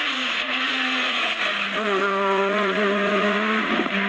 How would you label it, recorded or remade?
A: remade